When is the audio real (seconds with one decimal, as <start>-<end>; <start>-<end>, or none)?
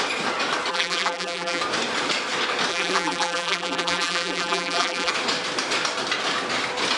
0.0-0.7; 1.6-2.7; 5.1-7.0